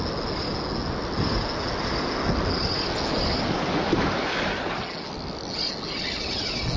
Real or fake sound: real